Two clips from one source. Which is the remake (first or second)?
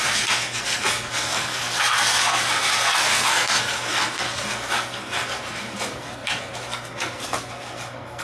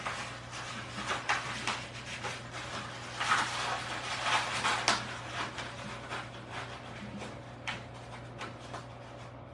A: first